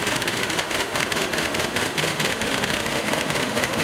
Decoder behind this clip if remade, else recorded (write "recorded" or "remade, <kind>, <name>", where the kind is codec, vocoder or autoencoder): remade, autoencoder, DAC-VAE